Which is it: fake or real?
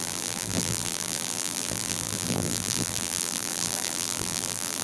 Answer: fake